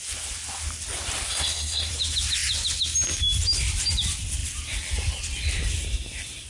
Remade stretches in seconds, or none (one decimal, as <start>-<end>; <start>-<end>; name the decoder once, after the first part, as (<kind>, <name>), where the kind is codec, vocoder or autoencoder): 1.3-1.9 (codec, SNAC)